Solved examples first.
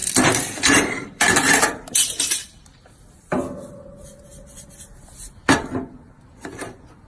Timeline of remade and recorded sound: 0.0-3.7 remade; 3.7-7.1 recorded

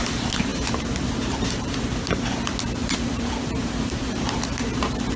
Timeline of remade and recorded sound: 0.0-0.5 recorded; 0.5-1.9 remade; 1.9-2.8 recorded; 2.8-4.4 remade; 4.4-5.2 recorded

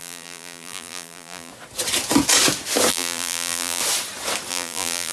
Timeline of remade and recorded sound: 0.0-1.5 remade; 1.5-2.9 recorded; 2.9-3.8 remade; 3.8-4.5 recorded; 4.5-5.1 remade